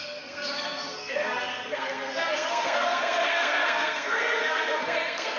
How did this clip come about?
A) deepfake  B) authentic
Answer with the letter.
A